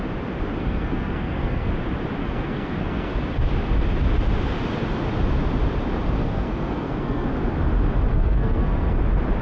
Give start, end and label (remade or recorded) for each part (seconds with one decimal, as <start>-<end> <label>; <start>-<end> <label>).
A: 0.0-0.6 recorded; 0.6-1.7 remade; 1.7-2.2 recorded; 2.2-3.2 remade; 3.2-6.2 recorded; 6.2-7.3 remade; 7.3-8.1 recorded; 8.1-9.0 remade; 9.0-9.4 recorded

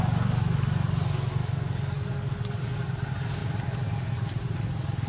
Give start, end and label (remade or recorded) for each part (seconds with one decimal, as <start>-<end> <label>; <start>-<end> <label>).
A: 0.0-1.4 recorded; 1.4-2.3 remade; 2.3-5.1 recorded

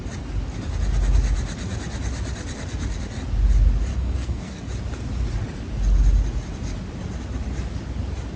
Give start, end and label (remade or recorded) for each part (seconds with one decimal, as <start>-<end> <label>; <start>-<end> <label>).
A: 0.0-3.9 recorded; 3.9-4.6 remade; 4.6-8.4 recorded

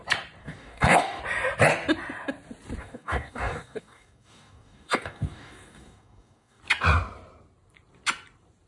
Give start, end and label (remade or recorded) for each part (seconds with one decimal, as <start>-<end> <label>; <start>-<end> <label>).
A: 0.0-0.4 recorded; 0.4-1.2 remade; 1.2-2.8 recorded; 2.8-6.6 remade; 6.6-8.7 recorded

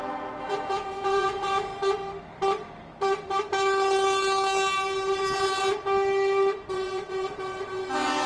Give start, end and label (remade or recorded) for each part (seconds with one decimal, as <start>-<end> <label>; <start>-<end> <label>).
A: 0.0-1.7 remade; 1.7-6.7 recorded; 6.7-8.3 remade

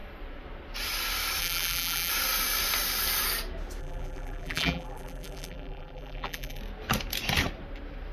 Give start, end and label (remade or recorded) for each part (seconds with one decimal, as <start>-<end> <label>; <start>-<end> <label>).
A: 0.0-1.4 recorded; 1.4-2.1 remade; 2.1-3.8 recorded; 3.8-6.6 remade; 6.6-8.1 recorded